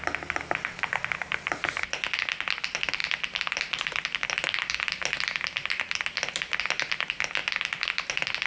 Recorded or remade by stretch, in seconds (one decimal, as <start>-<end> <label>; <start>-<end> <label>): 0.0-8.5 recorded